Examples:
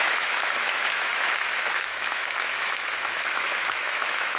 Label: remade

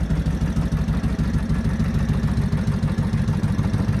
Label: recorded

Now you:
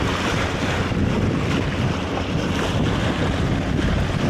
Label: recorded